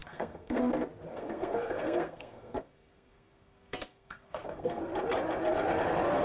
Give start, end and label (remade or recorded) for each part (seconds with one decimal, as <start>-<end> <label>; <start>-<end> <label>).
0.0-0.6 remade; 0.6-1.1 recorded; 1.1-4.8 remade; 4.8-6.2 recorded